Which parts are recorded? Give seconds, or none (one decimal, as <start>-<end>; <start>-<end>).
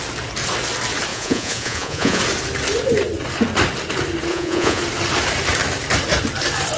0.0-1.1; 2.2-4.3; 4.8-6.8